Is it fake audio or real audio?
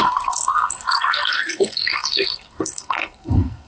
fake